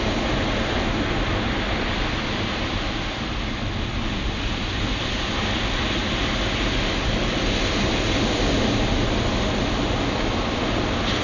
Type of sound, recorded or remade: recorded